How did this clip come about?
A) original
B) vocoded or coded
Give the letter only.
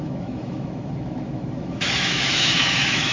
B